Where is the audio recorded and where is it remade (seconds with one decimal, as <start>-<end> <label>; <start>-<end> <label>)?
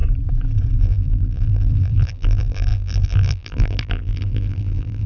0.0-0.8 recorded; 0.8-5.1 remade